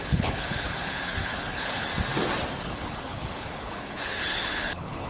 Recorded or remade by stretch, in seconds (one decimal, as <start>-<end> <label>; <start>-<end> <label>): 0.0-1.9 remade; 1.9-2.6 recorded; 2.6-5.1 remade